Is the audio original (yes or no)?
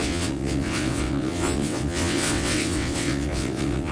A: no